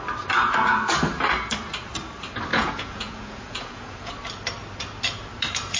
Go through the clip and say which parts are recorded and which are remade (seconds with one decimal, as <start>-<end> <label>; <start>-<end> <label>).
0.0-2.5 recorded; 2.5-4.1 remade; 4.1-5.8 recorded